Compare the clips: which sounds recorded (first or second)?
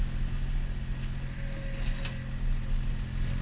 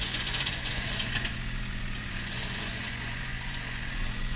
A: first